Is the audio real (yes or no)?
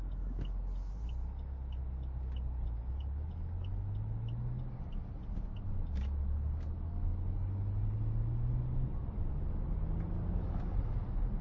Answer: yes